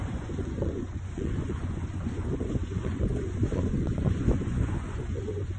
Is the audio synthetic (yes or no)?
yes